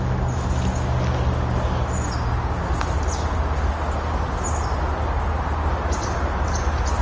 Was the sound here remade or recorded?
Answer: recorded